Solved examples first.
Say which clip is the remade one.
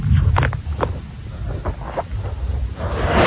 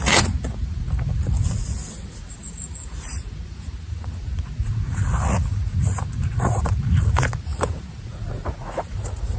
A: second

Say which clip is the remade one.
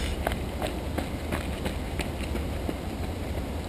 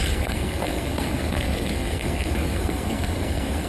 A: second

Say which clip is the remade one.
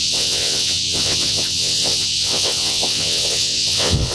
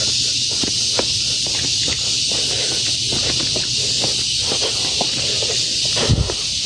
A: first